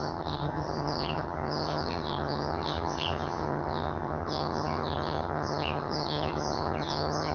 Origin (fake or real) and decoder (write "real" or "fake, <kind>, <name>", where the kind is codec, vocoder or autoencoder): fake, vocoder, HiFi-GAN